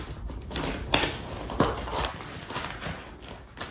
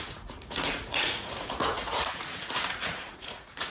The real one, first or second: first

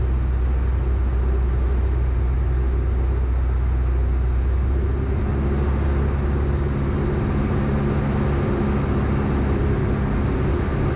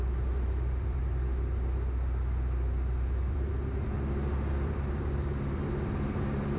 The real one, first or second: first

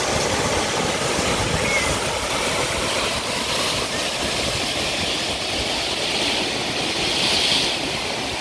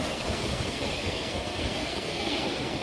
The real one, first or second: first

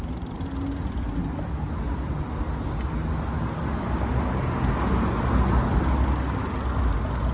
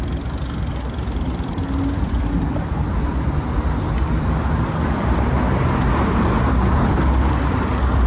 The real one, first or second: first